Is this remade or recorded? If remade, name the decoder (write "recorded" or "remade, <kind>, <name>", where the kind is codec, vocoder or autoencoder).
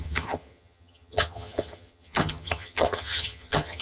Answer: remade, vocoder, HiFi-GAN